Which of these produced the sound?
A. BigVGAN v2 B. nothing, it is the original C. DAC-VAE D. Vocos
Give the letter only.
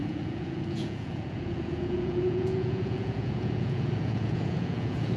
D